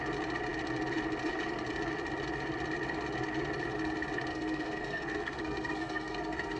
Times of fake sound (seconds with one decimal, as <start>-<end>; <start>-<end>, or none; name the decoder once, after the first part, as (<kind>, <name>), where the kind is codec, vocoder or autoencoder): 4.3-6.6 (codec, SNAC)